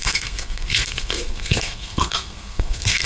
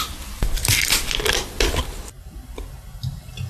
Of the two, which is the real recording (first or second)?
second